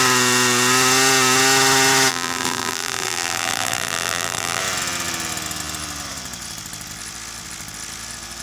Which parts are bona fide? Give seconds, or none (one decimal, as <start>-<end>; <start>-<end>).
0.0-2.1; 4.6-8.4